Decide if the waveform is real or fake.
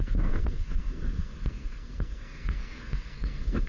fake